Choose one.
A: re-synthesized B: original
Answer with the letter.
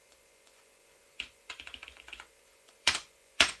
A